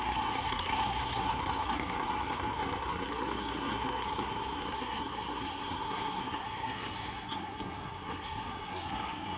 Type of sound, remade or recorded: remade